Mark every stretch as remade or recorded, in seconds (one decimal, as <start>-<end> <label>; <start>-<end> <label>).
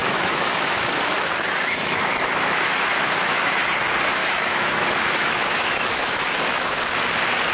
0.0-3.6 remade; 3.6-4.2 recorded; 4.2-6.8 remade; 6.8-7.5 recorded